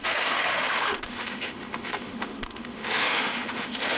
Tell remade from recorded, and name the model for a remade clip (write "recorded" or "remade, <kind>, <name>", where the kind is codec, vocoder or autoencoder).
remade, autoencoder, DAC-VAE